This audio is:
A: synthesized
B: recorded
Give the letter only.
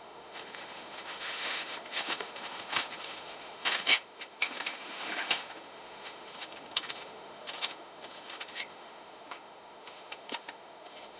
A